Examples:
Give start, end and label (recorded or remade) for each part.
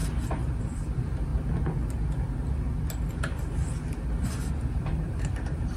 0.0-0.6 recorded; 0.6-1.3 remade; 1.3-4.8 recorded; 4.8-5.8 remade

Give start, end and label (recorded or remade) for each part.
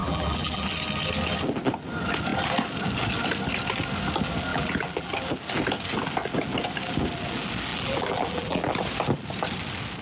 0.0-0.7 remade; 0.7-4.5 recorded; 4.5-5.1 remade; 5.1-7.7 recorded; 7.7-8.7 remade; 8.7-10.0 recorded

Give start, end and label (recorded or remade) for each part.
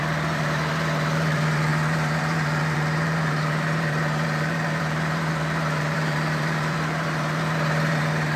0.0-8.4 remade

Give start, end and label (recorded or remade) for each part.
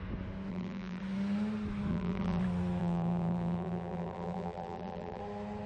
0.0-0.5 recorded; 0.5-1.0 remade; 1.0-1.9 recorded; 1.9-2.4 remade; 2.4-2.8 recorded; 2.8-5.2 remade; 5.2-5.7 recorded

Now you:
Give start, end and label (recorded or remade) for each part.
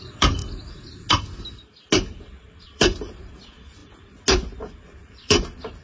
0.0-0.4 remade; 0.4-2.2 recorded; 2.2-3.8 remade; 3.8-4.8 recorded; 4.8-5.8 remade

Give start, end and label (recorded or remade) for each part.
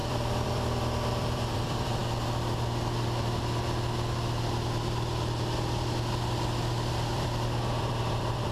0.0-2.0 remade; 2.0-7.1 recorded; 7.1-8.5 remade